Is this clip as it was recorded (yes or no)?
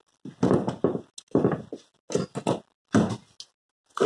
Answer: yes